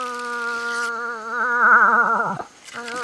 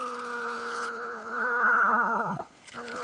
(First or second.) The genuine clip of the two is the first